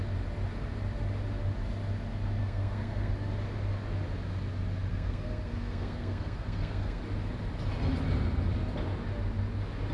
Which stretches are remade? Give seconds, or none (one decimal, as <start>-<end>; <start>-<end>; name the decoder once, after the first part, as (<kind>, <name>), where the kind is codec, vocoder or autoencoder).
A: 2.4-3.1 (codec, SNAC); 4.9-7.0